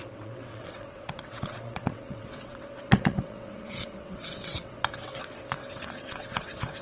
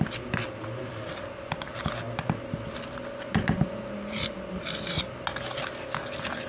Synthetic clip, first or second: first